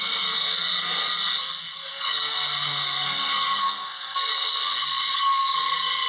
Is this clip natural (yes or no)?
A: no